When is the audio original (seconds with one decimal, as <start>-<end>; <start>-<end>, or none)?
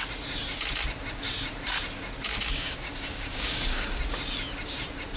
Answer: 0.0-2.3; 4.0-5.2